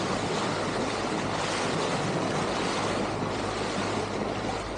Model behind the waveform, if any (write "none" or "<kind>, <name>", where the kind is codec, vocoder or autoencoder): none